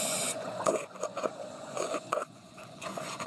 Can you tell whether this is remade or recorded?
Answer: remade